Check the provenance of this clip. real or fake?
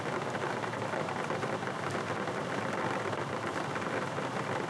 real